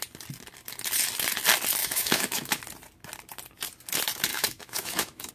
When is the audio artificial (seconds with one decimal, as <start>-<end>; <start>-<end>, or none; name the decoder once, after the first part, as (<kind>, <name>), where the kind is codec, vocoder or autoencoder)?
1.8-2.6 (autoencoder, DAC-VAE); 4.3-5.3